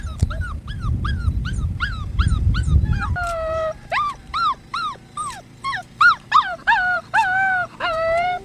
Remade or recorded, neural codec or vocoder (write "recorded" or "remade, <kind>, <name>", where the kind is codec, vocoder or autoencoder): remade, vocoder, BigVGAN v2